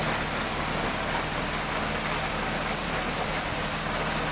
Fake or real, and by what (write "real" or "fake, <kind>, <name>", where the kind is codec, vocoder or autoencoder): real